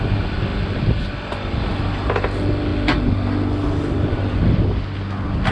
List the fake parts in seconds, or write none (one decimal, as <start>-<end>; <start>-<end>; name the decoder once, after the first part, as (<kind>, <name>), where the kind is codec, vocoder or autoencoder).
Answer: none